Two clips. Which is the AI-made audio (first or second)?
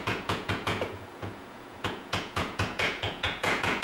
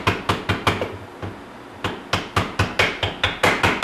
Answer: first